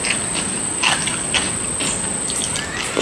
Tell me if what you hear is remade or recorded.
recorded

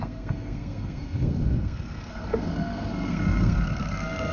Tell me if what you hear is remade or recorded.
remade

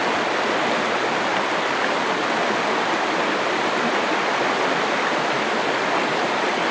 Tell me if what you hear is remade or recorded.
recorded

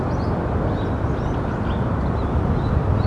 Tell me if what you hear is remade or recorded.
recorded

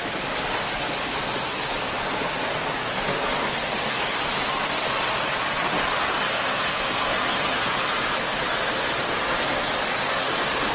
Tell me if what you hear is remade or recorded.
recorded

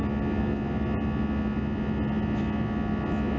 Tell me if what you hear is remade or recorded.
recorded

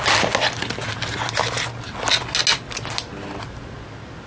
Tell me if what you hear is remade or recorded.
recorded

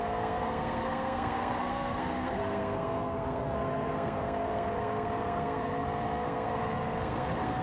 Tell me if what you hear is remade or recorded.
remade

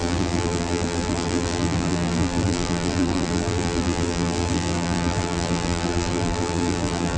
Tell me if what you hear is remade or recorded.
remade